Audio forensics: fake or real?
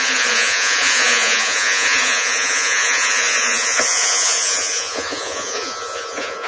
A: fake